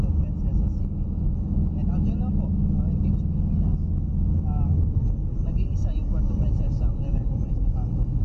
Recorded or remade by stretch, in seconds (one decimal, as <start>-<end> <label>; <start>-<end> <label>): 0.0-8.2 recorded